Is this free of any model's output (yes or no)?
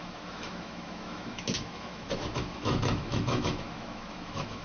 no